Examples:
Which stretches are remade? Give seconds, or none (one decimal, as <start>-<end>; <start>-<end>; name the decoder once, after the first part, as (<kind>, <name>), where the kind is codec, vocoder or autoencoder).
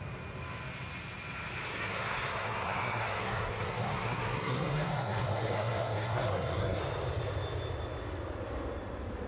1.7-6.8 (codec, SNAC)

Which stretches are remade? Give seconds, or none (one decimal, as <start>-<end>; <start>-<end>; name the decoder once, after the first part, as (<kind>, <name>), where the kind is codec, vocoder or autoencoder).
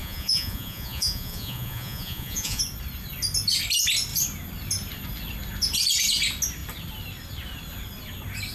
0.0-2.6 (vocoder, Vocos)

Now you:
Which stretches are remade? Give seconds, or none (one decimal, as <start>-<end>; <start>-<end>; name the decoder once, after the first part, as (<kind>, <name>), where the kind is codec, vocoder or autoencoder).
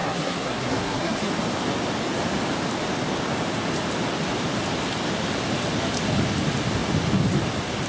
0.0-1.3 (codec, SNAC)